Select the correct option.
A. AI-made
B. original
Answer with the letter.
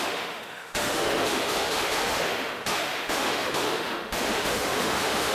A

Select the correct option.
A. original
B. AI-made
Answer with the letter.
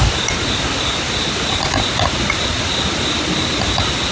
A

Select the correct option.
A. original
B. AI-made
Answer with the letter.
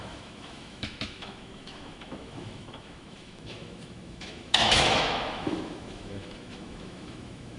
B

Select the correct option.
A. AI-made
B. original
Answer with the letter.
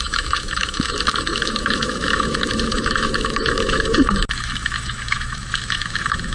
A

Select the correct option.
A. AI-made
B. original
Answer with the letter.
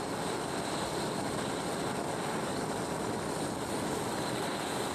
B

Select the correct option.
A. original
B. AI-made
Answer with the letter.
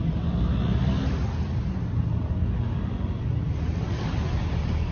A